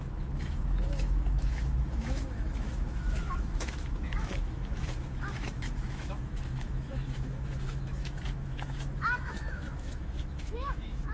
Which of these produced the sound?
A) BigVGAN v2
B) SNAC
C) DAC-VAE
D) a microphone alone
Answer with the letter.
C